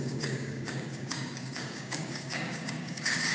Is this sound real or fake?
fake